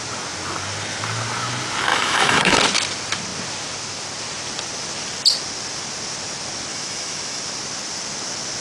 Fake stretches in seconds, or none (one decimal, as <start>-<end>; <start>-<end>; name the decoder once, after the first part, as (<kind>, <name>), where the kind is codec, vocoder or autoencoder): 1.9-2.6 (autoencoder, DAC-VAE); 6.7-7.4